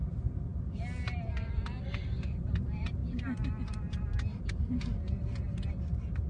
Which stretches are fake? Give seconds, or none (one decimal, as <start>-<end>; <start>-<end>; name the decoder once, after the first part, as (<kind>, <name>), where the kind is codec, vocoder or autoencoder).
none